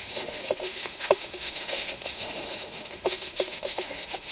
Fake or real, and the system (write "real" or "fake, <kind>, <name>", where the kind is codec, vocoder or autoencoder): fake, autoencoder, DAC-VAE